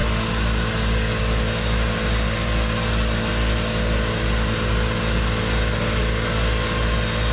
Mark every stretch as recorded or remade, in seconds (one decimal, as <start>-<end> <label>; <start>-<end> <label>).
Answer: 0.0-7.3 recorded